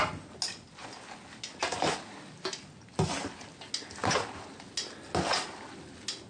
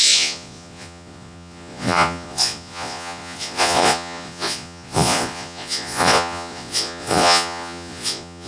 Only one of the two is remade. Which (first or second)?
second